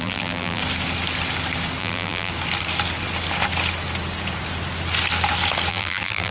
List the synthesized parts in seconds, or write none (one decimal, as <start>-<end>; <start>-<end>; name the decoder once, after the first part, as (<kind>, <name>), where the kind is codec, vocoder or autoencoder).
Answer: 0.0-0.6 (vocoder, BigVGAN v2); 1.8-2.3; 5.7-6.3